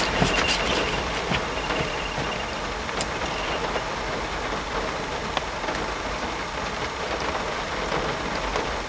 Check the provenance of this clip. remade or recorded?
recorded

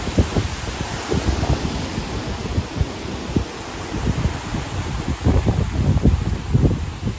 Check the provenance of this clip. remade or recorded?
recorded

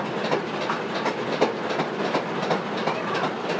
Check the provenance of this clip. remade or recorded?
recorded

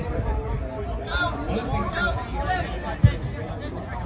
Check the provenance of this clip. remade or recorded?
recorded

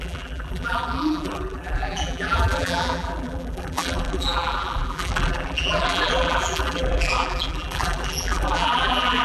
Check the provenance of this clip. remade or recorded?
remade